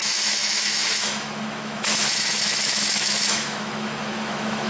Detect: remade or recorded remade